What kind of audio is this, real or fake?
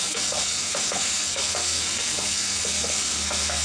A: fake